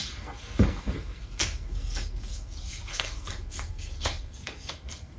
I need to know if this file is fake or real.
fake